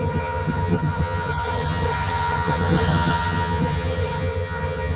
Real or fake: fake